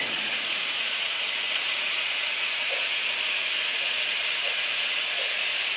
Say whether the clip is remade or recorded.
remade